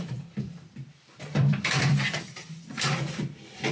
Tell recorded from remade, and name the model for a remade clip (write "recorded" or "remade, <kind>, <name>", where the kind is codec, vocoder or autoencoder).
remade, vocoder, BigVGAN v2